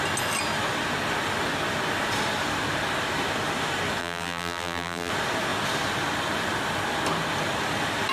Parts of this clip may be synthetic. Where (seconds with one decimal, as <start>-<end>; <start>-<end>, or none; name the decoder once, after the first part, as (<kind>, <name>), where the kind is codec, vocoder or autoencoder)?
4.0-5.1 (vocoder, BigVGAN v2)